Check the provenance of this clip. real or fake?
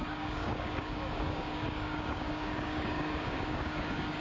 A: fake